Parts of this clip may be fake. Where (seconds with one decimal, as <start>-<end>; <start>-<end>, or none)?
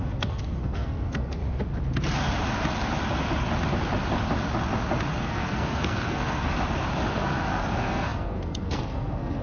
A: 0.0-1.4; 5.1-6.5; 7.1-9.4